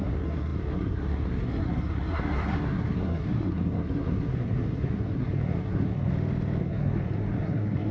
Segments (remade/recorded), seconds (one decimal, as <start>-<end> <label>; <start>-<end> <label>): 0.0-6.1 remade; 6.1-6.6 recorded; 6.6-7.9 remade